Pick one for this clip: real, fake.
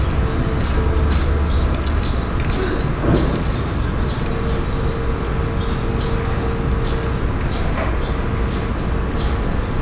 real